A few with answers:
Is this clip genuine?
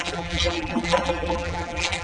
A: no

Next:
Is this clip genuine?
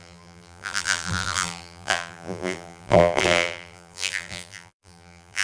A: no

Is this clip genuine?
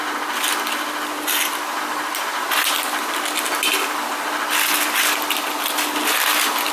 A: yes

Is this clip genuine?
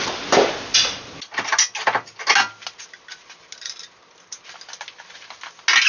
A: yes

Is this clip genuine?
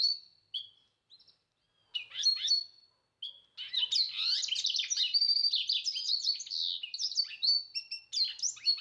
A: yes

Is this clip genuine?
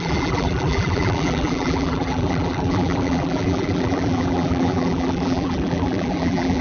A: no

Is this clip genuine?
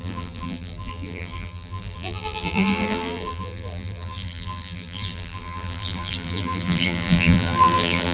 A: no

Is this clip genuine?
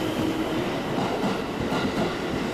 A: yes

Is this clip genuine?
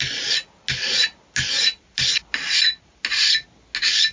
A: yes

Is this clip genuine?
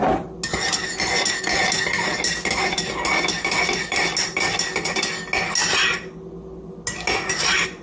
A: yes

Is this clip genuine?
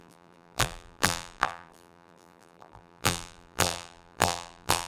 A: no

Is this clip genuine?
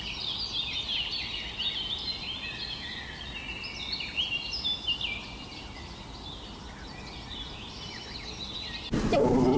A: yes